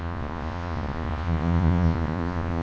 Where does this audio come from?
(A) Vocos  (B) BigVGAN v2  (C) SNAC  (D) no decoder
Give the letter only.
A